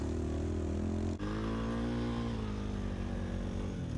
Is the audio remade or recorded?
recorded